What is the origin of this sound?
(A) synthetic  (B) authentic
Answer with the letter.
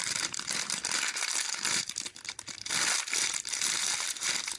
A